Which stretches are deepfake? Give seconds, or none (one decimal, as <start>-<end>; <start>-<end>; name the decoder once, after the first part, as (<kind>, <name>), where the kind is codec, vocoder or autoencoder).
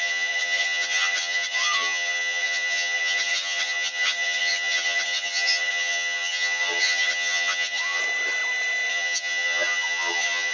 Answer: 0.0-8.0 (vocoder, HiFi-GAN); 8.9-10.5